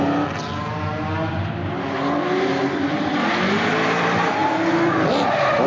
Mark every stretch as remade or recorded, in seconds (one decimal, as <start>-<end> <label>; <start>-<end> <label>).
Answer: 0.0-5.7 recorded